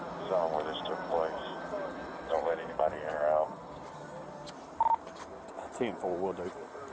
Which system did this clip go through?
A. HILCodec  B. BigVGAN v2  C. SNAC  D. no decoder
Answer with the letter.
D